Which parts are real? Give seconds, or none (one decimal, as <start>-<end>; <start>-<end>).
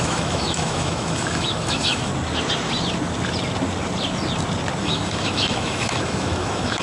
2.1-4.8